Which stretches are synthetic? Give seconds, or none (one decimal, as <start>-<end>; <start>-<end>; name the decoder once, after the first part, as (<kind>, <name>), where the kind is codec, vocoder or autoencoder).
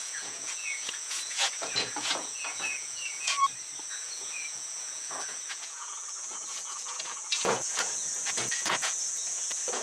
0.0-3.4 (vocoder, Vocos); 3.9-9.8